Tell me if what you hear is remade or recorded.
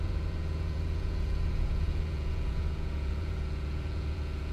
remade